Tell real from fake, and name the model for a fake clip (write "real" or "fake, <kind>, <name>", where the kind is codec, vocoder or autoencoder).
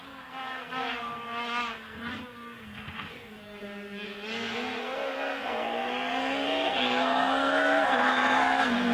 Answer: fake, codec, SNAC